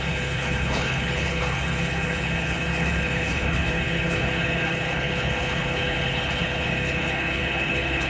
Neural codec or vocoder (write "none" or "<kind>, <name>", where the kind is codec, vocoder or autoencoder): codec, HILCodec